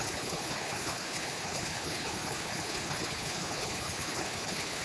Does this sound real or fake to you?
fake